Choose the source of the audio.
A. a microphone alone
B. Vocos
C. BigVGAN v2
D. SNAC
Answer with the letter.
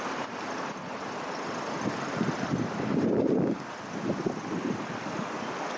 A